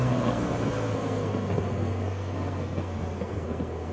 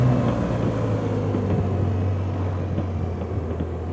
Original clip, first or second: second